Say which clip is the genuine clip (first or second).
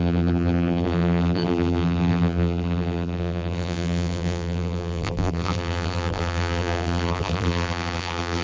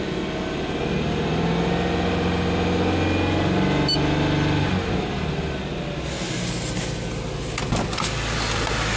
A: second